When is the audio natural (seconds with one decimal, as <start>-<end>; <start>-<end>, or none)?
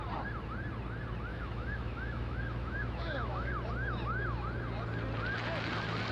0.0-1.3; 3.5-6.1